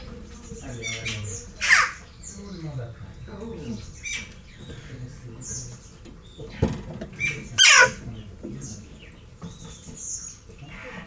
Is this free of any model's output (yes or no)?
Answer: yes